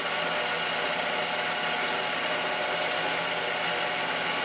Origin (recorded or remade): recorded